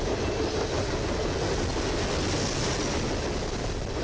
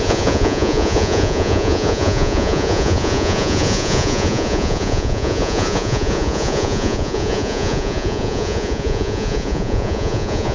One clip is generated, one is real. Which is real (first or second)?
first